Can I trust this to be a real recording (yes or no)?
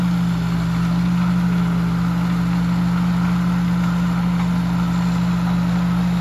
yes